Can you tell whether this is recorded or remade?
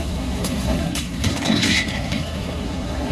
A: remade